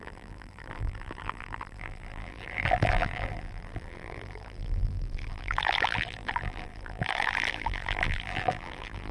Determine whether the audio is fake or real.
fake